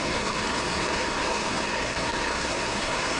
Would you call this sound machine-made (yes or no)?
yes